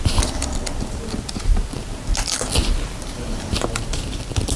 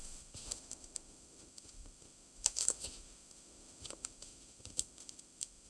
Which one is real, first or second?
first